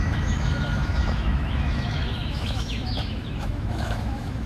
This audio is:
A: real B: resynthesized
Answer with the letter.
B